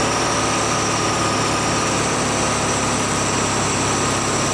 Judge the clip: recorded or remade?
recorded